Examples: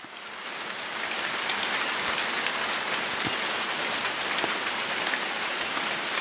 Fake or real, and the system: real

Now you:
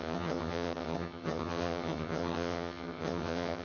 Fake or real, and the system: fake, vocoder, HiFi-GAN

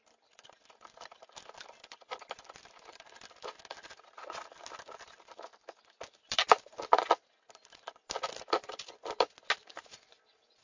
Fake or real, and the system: real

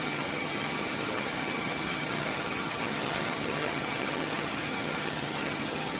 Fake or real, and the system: fake, vocoder, HiFi-GAN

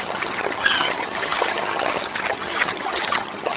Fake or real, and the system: fake, vocoder, HiFi-GAN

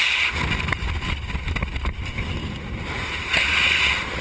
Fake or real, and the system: real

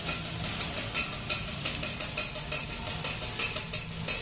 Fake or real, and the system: real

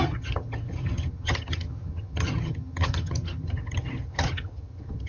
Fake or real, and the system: fake, vocoder, HiFi-GAN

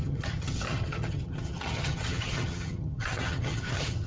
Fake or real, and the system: fake, vocoder, HiFi-GAN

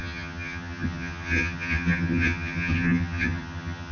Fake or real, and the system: fake, vocoder, HiFi-GAN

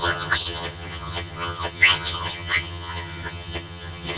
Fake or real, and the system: fake, vocoder, HiFi-GAN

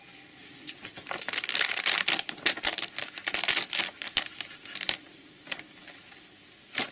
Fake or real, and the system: real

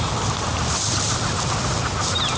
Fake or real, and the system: real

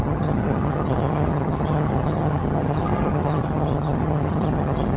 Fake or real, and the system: fake, vocoder, HiFi-GAN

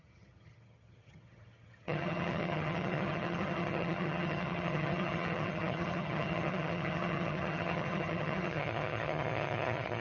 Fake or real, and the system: fake, vocoder, HiFi-GAN